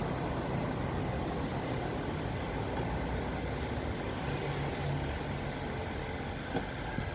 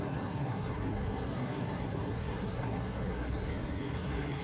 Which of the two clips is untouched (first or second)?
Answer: first